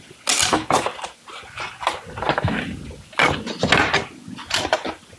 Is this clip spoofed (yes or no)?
no